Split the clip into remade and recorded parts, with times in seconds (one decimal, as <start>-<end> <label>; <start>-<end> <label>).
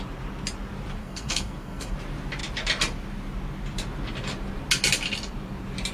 0.0-1.0 recorded; 1.0-1.9 remade; 1.9-5.9 recorded